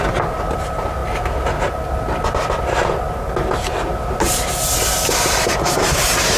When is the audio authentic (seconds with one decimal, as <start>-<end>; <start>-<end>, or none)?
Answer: 0.0-6.4